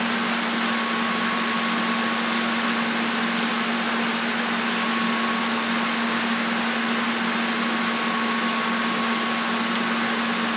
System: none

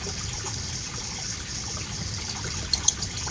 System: none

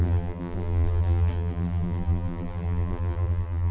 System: vocoder, BigVGAN v2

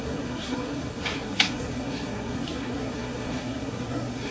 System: codec, SNAC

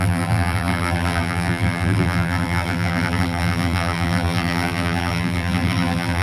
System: vocoder, BigVGAN v2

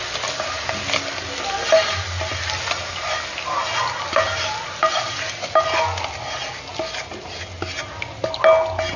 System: none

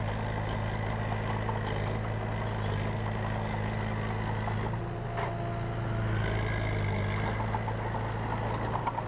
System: none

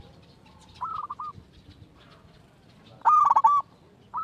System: none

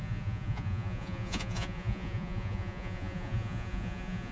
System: vocoder, Vocos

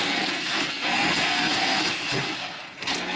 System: codec, SNAC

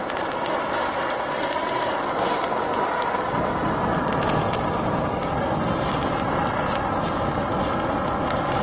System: none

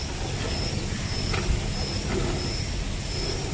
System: none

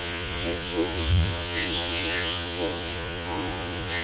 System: vocoder, Vocos